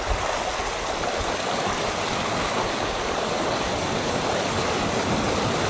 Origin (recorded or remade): recorded